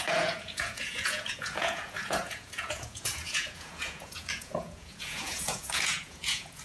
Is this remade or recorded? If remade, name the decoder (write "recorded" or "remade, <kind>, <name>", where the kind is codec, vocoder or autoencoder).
remade, vocoder, Vocos